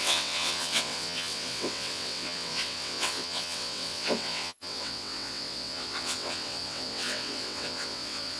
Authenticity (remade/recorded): remade